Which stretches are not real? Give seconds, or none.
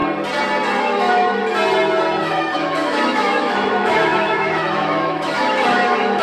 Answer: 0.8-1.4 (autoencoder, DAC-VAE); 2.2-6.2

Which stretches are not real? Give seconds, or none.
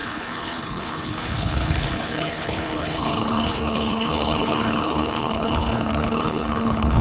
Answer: 0.0-7.0 (codec, HILCodec)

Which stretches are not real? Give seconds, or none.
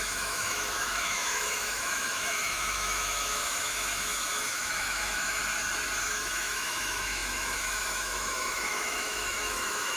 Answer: 0.0-5.4 (autoencoder, DAC-VAE); 6.0-10.0